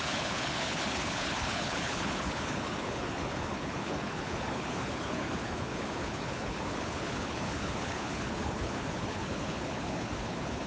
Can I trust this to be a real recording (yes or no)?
no